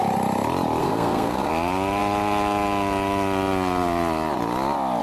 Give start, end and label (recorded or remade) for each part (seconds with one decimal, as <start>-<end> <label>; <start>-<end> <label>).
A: 0.0-0.8 recorded; 0.8-1.5 remade; 1.5-5.0 recorded